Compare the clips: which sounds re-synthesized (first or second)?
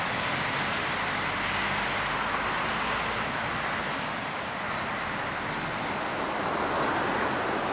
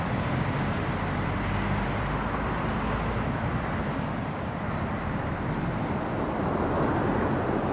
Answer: second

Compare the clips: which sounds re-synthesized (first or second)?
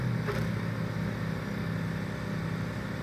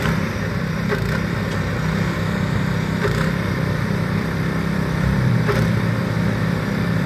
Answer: second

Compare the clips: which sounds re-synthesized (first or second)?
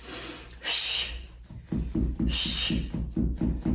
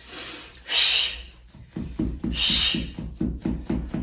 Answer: second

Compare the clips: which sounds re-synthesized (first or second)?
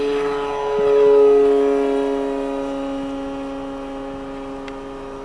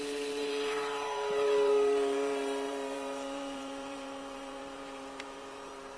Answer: second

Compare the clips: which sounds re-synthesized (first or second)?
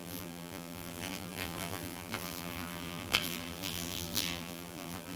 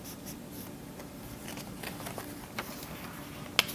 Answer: first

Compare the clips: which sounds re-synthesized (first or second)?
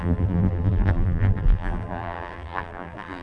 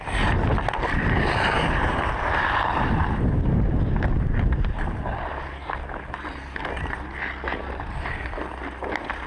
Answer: first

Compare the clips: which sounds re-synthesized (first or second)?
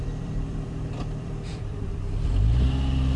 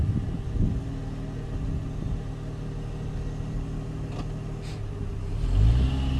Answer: first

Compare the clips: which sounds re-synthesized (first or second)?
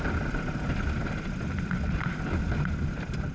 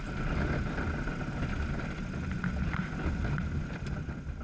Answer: first